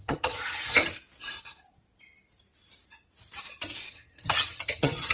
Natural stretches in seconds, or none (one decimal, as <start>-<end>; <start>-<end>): 0.8-3.9